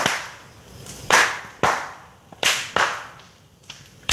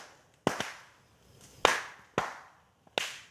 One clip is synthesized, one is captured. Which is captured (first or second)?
second